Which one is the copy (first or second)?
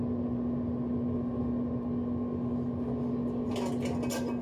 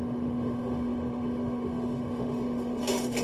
second